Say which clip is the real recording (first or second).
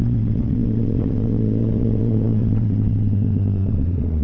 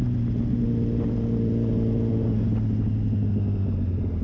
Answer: second